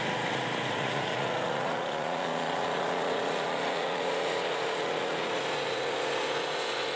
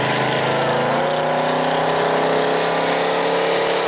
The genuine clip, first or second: second